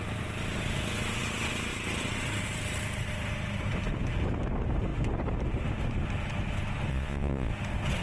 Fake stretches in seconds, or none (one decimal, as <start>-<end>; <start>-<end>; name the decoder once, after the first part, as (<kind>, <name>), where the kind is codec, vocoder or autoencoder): 6.9-7.5 (vocoder, Vocos)